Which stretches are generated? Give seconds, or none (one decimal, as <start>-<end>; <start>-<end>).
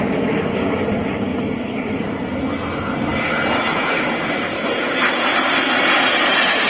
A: 1.3-2.4; 3.1-5.8